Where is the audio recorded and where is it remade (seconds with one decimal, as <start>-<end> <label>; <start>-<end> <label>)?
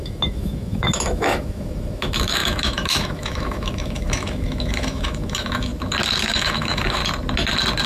0.0-5.7 remade; 5.7-6.2 recorded; 6.2-7.0 remade; 7.0-7.9 recorded